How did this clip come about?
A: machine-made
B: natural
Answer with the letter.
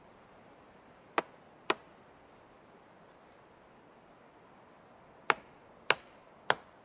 B